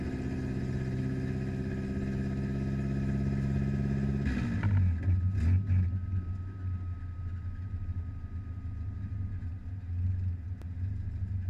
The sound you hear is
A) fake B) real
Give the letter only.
B